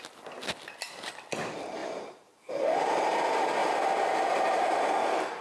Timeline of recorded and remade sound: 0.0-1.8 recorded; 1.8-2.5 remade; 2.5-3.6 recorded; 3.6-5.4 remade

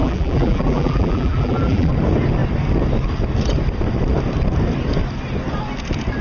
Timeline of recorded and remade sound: 0.0-1.9 remade; 1.9-6.2 recorded

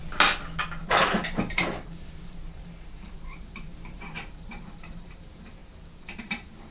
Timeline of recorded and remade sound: 0.0-0.8 recorded; 0.8-5.6 remade; 5.6-6.2 recorded; 6.2-6.7 remade

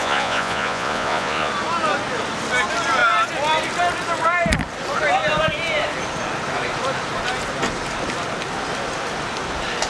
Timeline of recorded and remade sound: 0.0-1.5 remade; 1.5-9.9 recorded

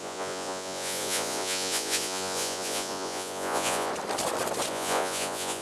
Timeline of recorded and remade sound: 0.0-3.9 remade; 3.9-4.7 recorded; 4.7-5.6 remade

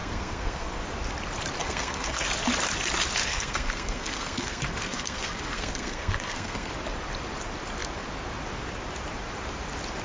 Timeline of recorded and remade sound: 0.0-0.8 remade; 0.8-1.6 recorded; 1.6-2.3 remade; 2.3-3.2 recorded; 3.2-6.7 remade; 6.7-10.0 recorded

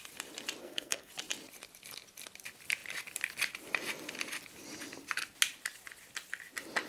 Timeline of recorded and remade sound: 0.0-0.6 recorded; 0.6-1.1 remade; 1.1-6.9 recorded

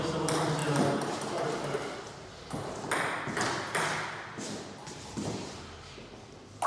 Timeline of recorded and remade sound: 0.0-6.7 recorded